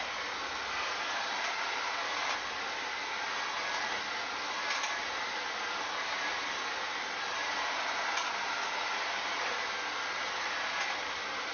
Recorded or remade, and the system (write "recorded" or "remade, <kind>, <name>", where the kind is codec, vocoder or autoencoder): recorded